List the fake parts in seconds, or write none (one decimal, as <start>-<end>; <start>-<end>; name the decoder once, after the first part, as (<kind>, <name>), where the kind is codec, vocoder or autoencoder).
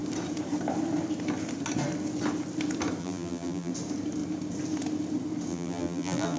3.0-3.7 (vocoder, BigVGAN v2); 5.5-6.4